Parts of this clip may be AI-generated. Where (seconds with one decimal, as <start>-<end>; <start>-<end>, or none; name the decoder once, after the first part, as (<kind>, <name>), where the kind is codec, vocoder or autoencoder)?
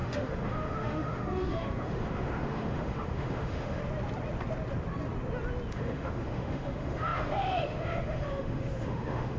0.0-3.8 (autoencoder, DAC-VAE); 5.7-9.4